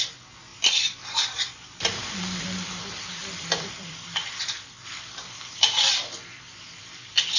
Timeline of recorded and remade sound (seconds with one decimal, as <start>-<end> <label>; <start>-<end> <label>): 0.0-0.5 recorded; 0.5-1.9 remade; 1.9-3.2 recorded; 3.2-5.9 remade; 5.9-7.4 recorded